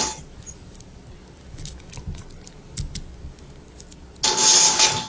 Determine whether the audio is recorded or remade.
recorded